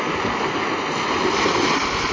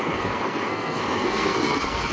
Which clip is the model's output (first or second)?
second